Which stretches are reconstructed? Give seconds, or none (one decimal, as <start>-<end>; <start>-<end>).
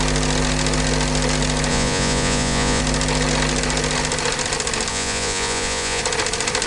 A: 1.7-2.8; 4.9-6.0